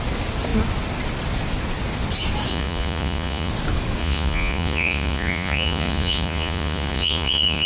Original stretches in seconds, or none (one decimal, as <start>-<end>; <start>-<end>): 0.0-2.5; 3.5-4.0